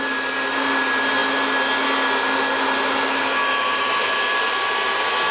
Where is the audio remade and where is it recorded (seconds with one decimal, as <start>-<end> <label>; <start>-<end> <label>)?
0.0-5.3 recorded